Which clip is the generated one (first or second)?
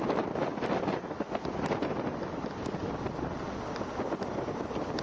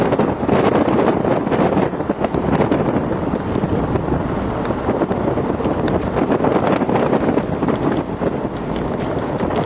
second